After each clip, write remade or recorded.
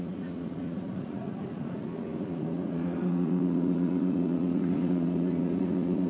remade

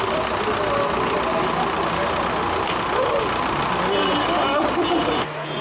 recorded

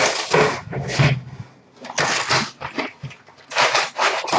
recorded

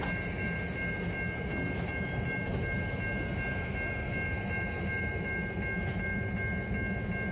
recorded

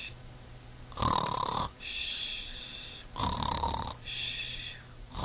remade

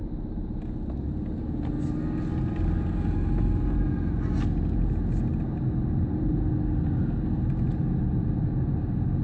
recorded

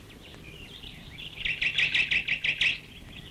recorded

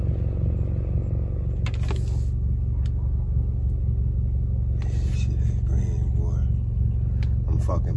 recorded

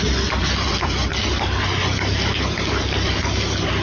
remade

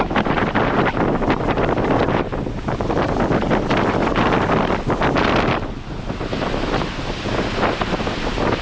recorded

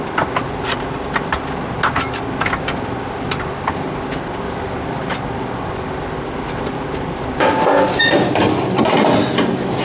recorded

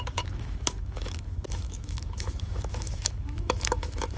remade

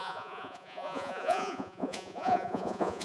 remade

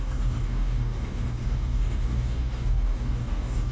remade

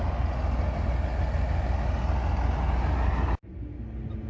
recorded